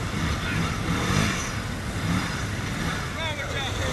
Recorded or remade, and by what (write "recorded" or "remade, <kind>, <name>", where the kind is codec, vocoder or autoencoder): recorded